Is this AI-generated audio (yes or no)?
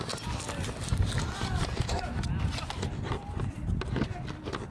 no